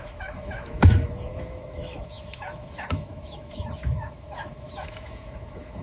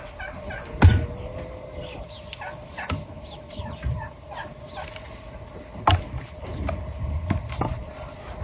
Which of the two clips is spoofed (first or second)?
first